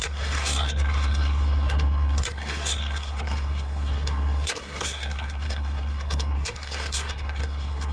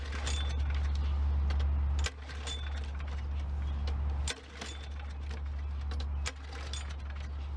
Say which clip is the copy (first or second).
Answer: first